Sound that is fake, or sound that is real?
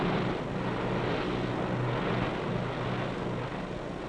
real